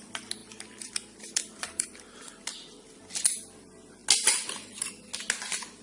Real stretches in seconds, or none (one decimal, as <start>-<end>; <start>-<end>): 0.0-0.4; 2.9-5.8